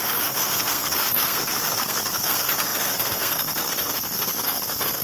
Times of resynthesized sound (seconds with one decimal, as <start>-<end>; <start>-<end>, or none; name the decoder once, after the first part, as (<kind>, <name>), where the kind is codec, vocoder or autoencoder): 0.0-5.0 (codec, SNAC)